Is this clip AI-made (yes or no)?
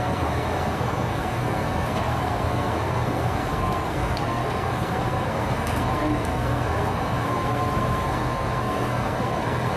yes